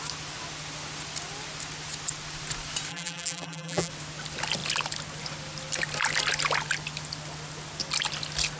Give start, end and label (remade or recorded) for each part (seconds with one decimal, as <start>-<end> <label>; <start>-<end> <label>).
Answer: 0.0-2.9 recorded; 2.9-3.9 remade; 3.9-8.6 recorded